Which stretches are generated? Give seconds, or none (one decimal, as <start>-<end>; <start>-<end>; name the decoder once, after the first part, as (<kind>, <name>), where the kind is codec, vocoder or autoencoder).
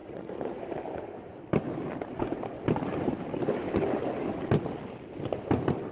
0.0-0.6 (vocoder, Vocos)